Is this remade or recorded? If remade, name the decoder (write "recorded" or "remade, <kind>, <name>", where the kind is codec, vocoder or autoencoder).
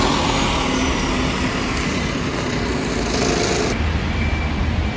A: recorded